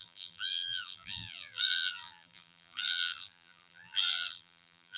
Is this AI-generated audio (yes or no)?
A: yes